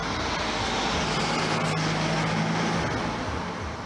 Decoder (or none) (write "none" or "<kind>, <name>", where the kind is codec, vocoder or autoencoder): none